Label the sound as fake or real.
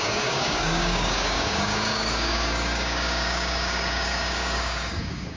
fake